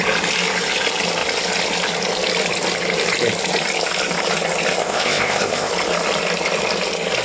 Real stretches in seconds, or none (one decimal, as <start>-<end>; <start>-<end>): 0.0-4.8; 5.7-7.2